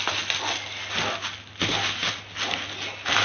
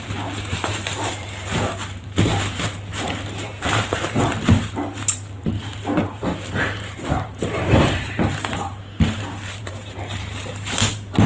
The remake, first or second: second